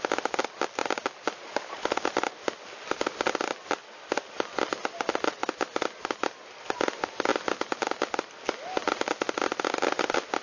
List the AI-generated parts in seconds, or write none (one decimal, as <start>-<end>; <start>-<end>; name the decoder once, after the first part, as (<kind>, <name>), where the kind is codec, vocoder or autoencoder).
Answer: none